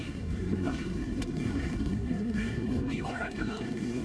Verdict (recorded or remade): remade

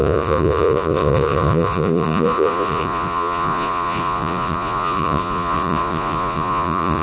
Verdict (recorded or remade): remade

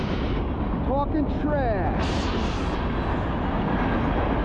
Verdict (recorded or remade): recorded